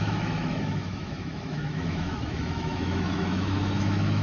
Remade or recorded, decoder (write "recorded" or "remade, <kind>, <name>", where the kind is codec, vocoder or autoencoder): remade, autoencoder, DAC-VAE